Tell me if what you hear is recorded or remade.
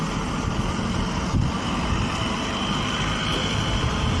recorded